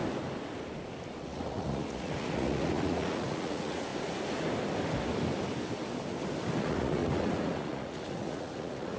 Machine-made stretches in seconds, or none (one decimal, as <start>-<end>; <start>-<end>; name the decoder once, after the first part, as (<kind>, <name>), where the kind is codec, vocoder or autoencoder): 1.2-3.9 (vocoder, Vocos); 6.6-9.0